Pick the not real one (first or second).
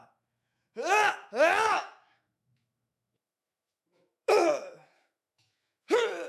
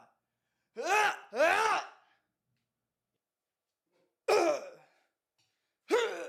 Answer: first